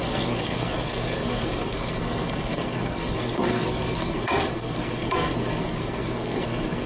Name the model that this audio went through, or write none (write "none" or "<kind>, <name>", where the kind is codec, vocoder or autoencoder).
codec, SNAC